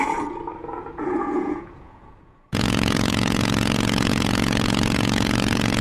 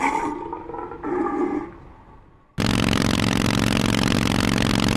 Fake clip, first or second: first